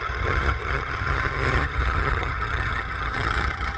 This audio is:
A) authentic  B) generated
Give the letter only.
B